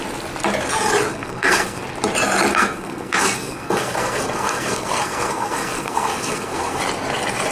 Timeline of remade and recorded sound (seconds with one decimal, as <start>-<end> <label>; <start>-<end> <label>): 0.0-1.1 recorded; 1.1-1.8 remade; 1.8-2.5 recorded; 2.5-6.8 remade; 6.8-7.5 recorded